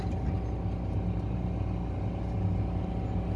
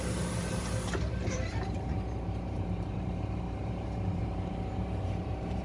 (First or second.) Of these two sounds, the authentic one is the first